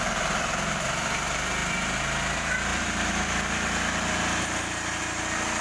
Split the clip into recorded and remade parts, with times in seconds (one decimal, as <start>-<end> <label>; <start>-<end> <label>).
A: 0.0-5.6 remade